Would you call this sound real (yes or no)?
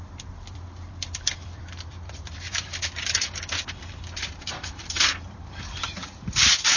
no